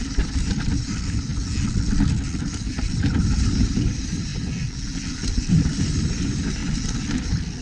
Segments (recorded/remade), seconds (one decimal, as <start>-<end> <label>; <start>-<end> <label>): 0.0-1.3 remade; 1.3-2.7 recorded; 2.7-4.3 remade; 4.3-5.5 recorded; 5.5-6.6 remade; 6.6-7.1 recorded; 7.1-7.6 remade